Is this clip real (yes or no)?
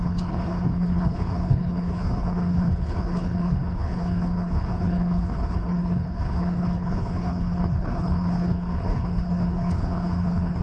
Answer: no